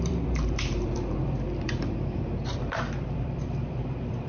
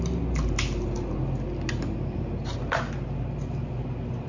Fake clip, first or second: first